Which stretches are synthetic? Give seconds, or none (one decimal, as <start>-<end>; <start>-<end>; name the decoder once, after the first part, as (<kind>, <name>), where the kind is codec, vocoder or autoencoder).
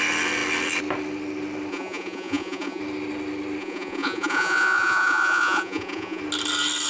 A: 1.7-2.8 (vocoder, Vocos); 3.6-6.2